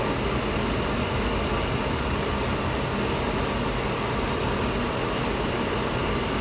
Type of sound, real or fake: real